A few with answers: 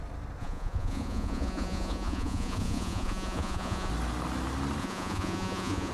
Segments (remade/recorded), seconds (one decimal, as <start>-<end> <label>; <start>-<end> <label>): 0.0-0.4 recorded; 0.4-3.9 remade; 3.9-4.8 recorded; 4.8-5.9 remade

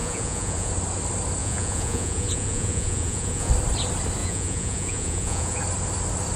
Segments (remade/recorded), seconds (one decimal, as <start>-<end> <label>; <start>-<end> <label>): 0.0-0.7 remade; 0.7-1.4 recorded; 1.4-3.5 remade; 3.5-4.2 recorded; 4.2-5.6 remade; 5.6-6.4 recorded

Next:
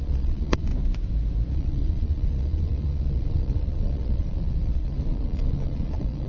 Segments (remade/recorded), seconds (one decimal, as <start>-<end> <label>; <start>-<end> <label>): 0.0-0.7 remade; 0.7-1.5 recorded; 1.5-6.3 remade

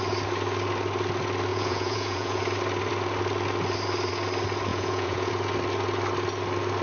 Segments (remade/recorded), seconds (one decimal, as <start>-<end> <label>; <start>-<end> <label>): 0.0-1.5 recorded; 1.5-2.4 remade; 2.4-4.7 recorded; 4.7-5.3 remade; 5.3-6.8 recorded

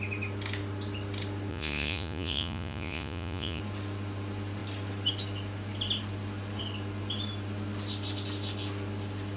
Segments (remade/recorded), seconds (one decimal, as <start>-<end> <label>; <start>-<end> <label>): 0.0-1.5 recorded; 1.5-3.6 remade; 3.6-9.4 recorded

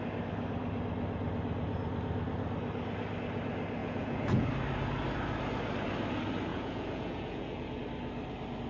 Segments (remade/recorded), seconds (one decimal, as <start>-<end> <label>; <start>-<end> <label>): 0.0-3.8 recorded; 3.8-4.5 remade; 4.5-6.5 recorded; 6.5-7.8 remade; 7.8-8.7 recorded

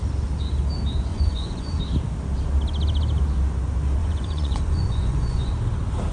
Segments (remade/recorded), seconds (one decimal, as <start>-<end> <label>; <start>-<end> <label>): 0.0-1.1 recorded; 1.1-1.8 remade; 1.8-4.0 recorded; 4.0-5.5 remade; 5.5-6.1 recorded

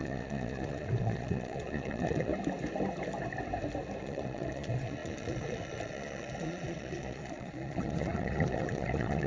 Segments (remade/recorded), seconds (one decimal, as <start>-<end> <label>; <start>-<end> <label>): 0.0-2.3 remade; 2.3-4.0 recorded; 4.0-9.3 remade